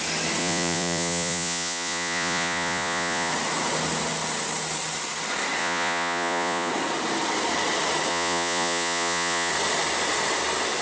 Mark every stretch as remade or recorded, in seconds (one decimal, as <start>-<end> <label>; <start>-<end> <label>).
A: 0.0-0.4 recorded; 0.4-3.3 remade; 3.3-5.6 recorded; 5.6-6.7 remade; 6.7-8.1 recorded; 8.1-9.5 remade; 9.5-10.8 recorded